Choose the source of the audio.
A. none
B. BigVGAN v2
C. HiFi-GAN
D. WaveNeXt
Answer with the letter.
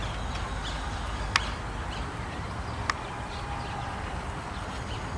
A